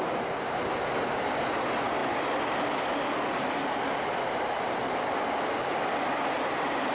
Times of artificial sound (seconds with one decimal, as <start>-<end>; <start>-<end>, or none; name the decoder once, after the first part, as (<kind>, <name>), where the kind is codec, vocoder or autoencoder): none